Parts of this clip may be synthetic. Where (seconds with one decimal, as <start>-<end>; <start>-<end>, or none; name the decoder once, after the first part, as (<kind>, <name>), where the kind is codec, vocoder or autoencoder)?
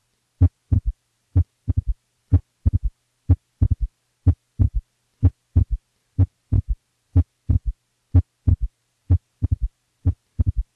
0.7-2.2 (vocoder, BigVGAN v2); 6.1-7.6; 8.7-10.8